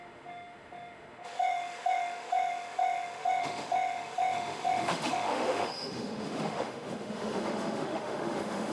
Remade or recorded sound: remade